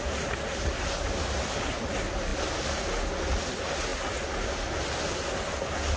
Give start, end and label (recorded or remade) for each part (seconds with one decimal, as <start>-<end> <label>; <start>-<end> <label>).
0.0-6.0 recorded